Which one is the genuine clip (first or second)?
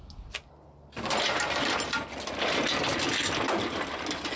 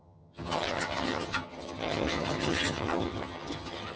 first